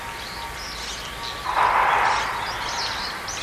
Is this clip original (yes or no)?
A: yes